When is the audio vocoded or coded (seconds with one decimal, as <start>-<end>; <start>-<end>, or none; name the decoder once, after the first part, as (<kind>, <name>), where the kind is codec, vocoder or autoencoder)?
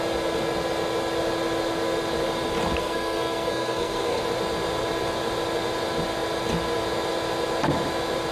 2.8-4.2 (codec, SNAC)